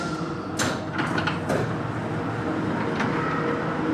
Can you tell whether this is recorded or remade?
recorded